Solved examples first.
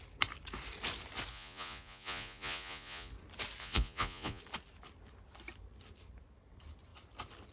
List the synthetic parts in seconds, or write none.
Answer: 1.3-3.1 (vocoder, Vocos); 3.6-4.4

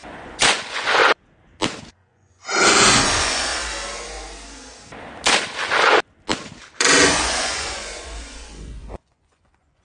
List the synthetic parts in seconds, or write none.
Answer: 0.0-1.0 (vocoder, Vocos); 1.8-3.5; 6.8-9.8